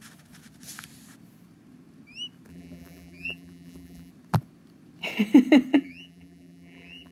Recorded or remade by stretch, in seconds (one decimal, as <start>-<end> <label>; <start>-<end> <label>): 0.0-2.5 recorded; 2.5-4.1 remade; 4.1-5.7 recorded; 5.7-7.1 remade